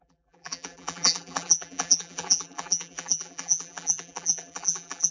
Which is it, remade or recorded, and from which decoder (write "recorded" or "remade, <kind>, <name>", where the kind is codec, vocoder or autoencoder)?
remade, vocoder, BigVGAN v2